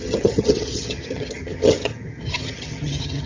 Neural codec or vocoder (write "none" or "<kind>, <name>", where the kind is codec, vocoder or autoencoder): vocoder, HiFi-GAN